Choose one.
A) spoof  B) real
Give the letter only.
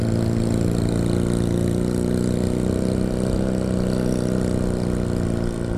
B